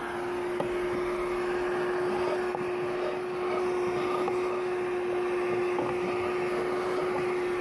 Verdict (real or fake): real